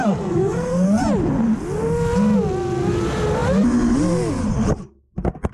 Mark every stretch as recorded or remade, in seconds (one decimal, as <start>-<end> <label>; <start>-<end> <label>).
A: 0.0-1.0 remade; 1.0-5.5 recorded

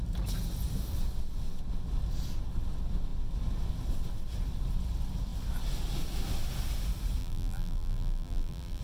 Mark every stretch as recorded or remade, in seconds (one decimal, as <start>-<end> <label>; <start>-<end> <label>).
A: 0.0-7.2 recorded; 7.2-8.8 remade

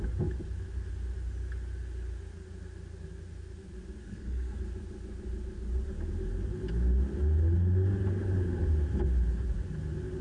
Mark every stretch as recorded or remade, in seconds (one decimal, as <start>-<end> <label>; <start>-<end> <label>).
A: 0.0-4.0 recorded; 4.0-4.6 remade; 4.6-10.2 recorded